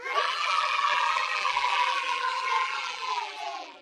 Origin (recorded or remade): remade